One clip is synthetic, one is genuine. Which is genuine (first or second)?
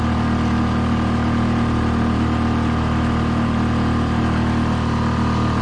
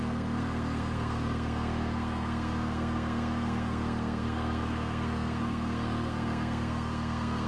first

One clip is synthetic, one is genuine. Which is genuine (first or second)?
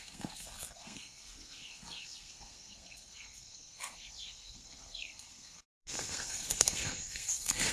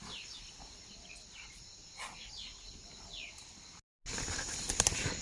second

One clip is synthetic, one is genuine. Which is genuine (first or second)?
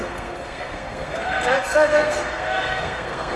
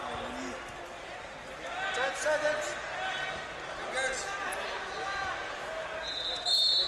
second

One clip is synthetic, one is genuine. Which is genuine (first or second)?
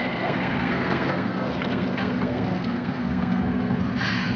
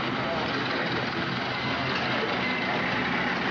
second